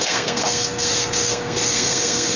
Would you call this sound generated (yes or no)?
yes